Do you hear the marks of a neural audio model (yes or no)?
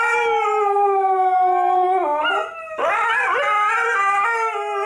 no